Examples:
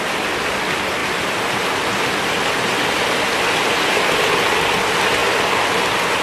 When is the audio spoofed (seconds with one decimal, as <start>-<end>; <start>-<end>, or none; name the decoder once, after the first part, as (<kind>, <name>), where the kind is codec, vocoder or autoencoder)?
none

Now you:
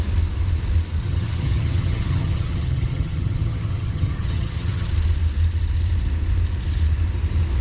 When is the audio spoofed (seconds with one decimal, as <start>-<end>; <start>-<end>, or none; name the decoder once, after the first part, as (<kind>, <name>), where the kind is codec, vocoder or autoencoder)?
1.0-4.9 (vocoder, HiFi-GAN)

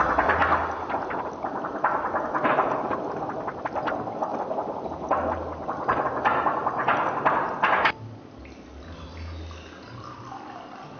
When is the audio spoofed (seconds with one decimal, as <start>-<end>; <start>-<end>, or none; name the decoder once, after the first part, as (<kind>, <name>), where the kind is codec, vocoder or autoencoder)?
none